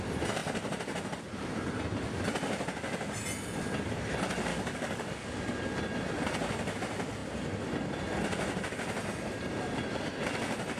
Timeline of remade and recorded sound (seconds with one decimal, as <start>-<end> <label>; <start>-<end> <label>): 0.0-4.5 recorded; 4.5-5.4 remade; 5.4-10.8 recorded